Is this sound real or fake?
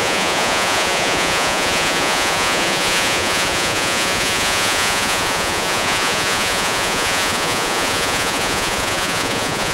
fake